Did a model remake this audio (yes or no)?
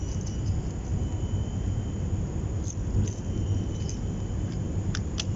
no